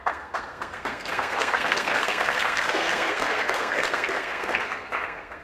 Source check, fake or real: fake